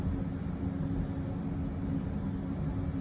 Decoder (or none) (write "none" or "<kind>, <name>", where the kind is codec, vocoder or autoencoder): none